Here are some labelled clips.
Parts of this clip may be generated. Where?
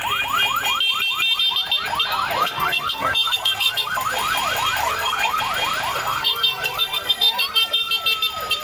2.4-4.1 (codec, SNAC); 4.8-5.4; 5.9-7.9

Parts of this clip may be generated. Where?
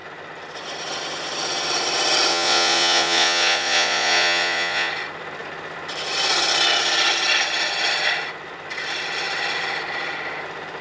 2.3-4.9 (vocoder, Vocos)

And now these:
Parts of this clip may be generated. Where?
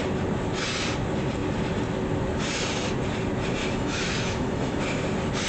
3.6-4.8 (autoencoder, DAC-VAE)